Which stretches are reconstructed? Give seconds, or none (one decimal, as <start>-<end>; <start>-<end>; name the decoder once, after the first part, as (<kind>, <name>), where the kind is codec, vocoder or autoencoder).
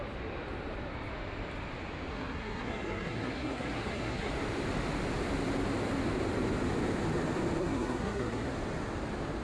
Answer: 2.1-4.3 (codec, SNAC); 7.6-8.5